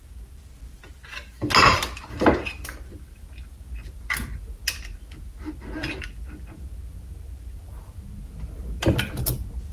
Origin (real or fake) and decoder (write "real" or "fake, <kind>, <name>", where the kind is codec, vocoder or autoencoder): real